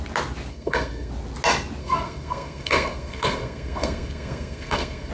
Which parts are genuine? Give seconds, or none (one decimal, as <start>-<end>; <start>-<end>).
0.0-0.5; 1.1-1.8